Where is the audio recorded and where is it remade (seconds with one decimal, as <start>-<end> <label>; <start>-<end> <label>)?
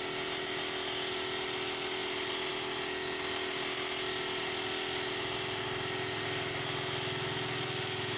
0.0-8.2 recorded